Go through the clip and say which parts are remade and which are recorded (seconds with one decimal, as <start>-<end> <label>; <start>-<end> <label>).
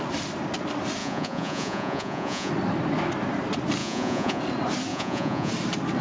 0.0-1.0 recorded; 1.0-2.5 remade; 2.5-3.8 recorded; 3.8-4.4 remade; 4.4-4.9 recorded; 4.9-5.5 remade; 5.5-6.0 recorded